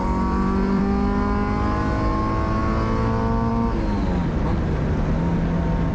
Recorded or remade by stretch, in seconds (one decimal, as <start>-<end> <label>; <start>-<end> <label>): 0.0-0.8 remade; 0.8-5.9 recorded